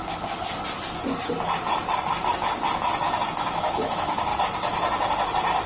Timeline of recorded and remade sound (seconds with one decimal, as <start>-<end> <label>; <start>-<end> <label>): 0.0-3.4 recorded; 3.4-4.3 remade; 4.3-5.7 recorded